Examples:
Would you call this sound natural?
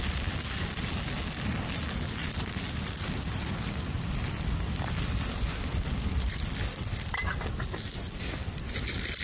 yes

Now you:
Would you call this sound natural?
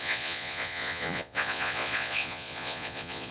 no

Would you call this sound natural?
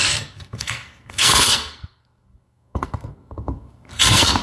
no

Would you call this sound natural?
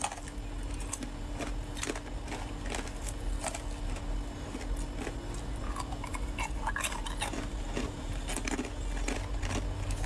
yes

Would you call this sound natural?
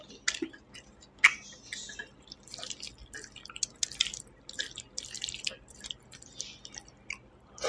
yes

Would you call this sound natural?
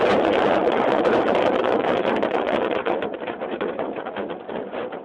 no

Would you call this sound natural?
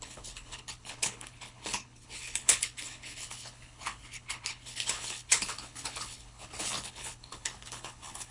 no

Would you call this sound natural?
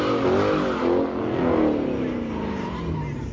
yes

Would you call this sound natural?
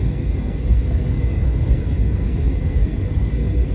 no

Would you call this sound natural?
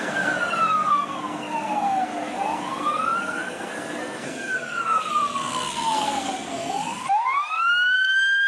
no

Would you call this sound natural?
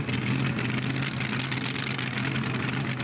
yes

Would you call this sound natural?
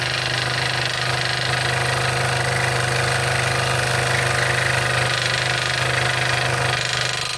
yes